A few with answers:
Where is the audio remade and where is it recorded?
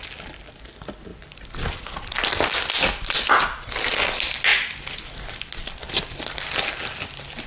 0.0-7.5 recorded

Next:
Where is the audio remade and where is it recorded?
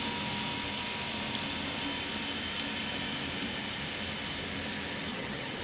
0.0-5.1 recorded; 5.1-5.6 remade